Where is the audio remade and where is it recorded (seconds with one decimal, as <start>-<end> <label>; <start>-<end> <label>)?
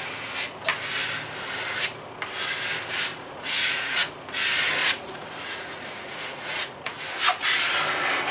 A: 0.0-3.1 recorded; 3.1-4.1 remade; 4.1-4.8 recorded; 4.8-7.0 remade; 7.0-8.3 recorded